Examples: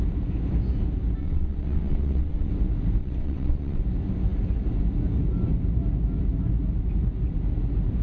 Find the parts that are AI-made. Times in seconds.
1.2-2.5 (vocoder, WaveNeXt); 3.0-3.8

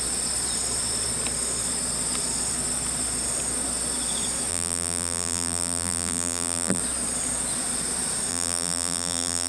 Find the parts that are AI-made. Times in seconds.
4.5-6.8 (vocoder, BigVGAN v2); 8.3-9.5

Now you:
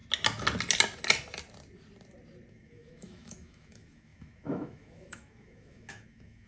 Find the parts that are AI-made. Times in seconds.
2.5-6.5 (autoencoder, DAC-VAE)

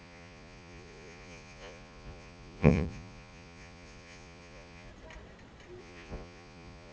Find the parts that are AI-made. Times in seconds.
0.0-4.9 (vocoder, Vocos); 5.8-6.9

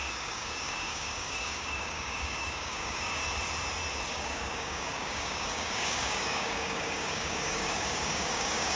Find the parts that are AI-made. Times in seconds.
0.0-3.2 (codec, DAC); 4.1-8.8